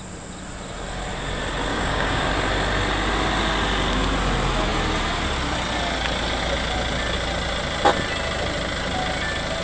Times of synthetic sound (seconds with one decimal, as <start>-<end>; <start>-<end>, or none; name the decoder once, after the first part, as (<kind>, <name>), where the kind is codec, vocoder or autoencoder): 1.7-2.2 (codec, DAC)